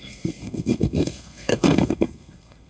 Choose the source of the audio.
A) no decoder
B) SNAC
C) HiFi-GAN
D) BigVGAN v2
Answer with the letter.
B